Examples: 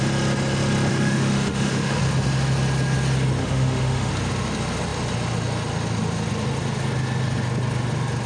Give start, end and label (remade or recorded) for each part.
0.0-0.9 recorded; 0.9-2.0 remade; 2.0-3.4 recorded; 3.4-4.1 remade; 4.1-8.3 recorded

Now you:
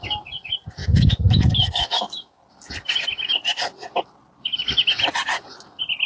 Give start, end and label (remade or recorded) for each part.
0.0-0.8 recorded; 0.8-2.4 remade; 2.4-6.1 recorded

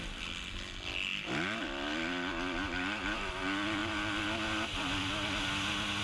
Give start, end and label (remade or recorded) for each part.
0.0-6.0 recorded